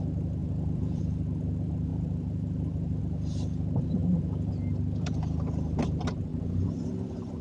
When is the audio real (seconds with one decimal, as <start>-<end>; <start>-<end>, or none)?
0.0-0.4; 1.0-1.9; 3.0-4.0; 4.5-6.3